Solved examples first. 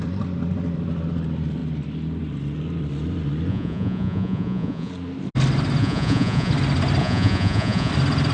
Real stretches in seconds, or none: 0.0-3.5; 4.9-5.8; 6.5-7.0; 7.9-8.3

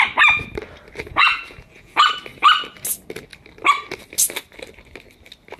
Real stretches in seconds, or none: 0.0-1.1; 2.1-5.6

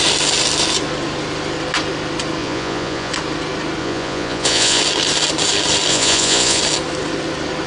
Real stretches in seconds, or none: 0.0-2.4; 3.1-3.8; 4.8-5.9; 6.6-7.7

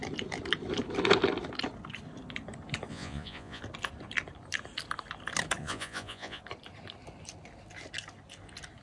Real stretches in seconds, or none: 0.0-2.9; 3.6-5.6; 6.4-8.8

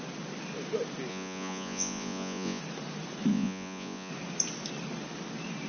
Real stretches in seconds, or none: 0.0-1.1; 2.6-3.3; 4.1-5.7